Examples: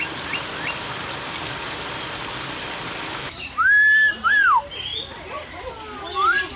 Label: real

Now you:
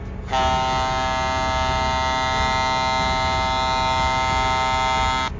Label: real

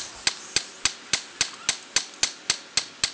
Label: real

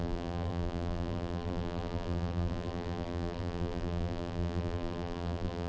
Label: fake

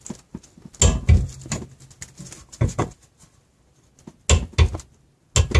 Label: real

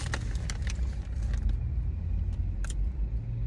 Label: real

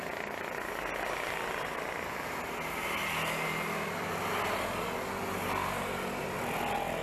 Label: real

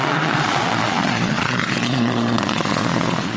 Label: fake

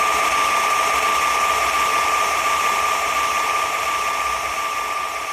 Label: real